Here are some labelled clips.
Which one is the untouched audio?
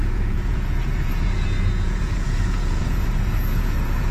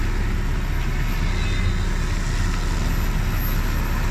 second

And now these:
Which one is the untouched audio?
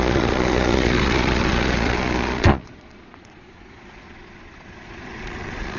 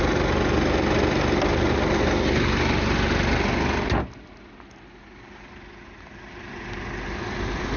second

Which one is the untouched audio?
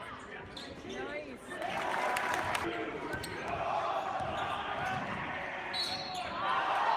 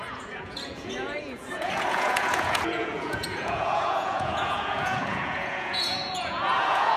first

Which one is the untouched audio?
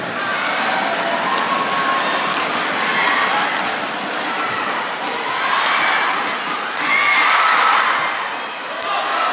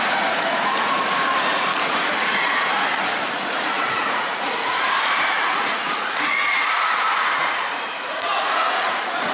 first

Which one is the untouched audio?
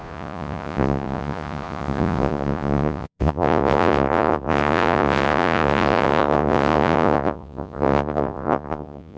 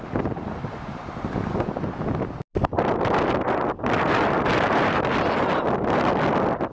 second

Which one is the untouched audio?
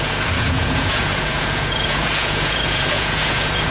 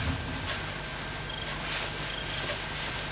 second